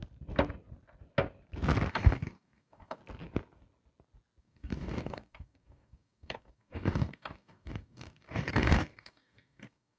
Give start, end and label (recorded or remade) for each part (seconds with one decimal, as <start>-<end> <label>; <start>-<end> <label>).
0.0-1.9 recorded; 1.9-3.0 remade; 3.0-4.4 recorded; 4.4-10.0 remade